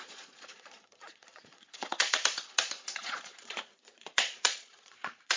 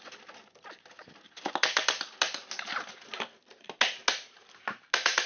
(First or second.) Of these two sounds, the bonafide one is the second